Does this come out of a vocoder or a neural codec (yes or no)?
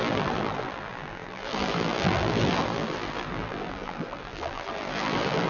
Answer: yes